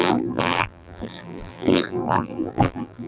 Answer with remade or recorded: remade